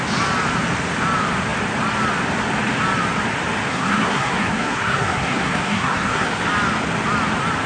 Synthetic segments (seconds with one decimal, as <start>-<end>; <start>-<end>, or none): 3.7-6.3